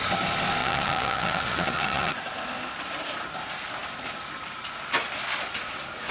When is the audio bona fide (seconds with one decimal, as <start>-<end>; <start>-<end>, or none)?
0.0-0.6; 2.3-6.1